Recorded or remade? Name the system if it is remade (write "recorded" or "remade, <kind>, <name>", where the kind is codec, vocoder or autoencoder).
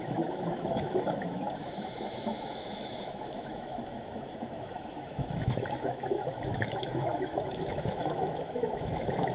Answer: remade, autoencoder, DAC-VAE